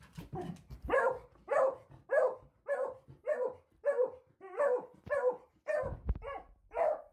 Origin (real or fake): real